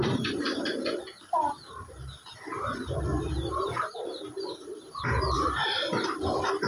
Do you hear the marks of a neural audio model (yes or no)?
yes